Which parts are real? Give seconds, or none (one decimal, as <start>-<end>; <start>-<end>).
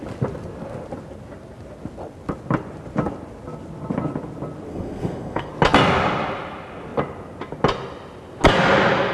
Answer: 0.0-4.7; 5.5-9.1